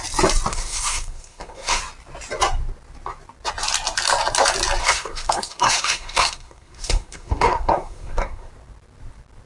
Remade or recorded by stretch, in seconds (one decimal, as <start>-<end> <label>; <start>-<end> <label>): 0.0-0.5 recorded; 0.5-1.8 remade; 1.8-4.8 recorded; 4.8-8.5 remade; 8.5-9.5 recorded